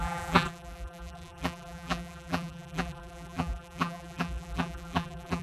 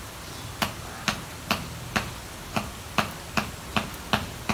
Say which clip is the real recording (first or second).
second